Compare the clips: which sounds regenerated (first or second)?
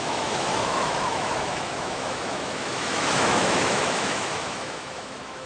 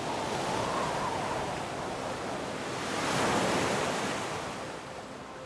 first